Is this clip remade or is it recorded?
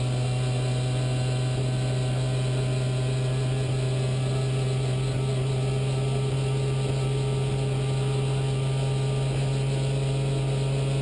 recorded